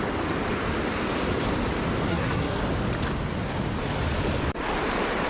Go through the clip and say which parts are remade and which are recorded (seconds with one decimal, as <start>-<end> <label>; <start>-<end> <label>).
0.0-2.1 recorded; 2.1-2.6 remade; 2.6-5.3 recorded